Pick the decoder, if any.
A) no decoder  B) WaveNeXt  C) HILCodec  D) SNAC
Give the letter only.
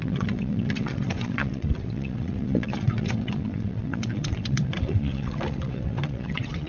B